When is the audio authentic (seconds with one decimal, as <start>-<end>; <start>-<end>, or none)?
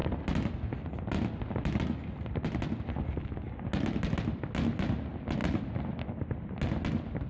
0.0-7.3